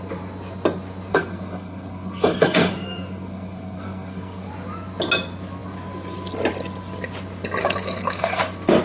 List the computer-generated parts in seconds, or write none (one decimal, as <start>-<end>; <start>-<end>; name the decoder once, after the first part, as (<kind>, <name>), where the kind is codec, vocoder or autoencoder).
1.1-4.5 (codec, SNAC); 7.6-8.4